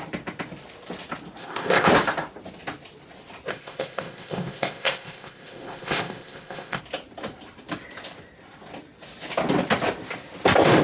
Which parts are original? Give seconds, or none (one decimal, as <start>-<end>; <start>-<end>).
0.0-1.4; 1.9-3.5; 6.8-10.8